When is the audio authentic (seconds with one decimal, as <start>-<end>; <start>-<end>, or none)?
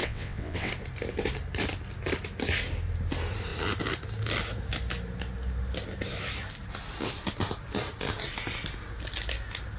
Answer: 0.7-9.8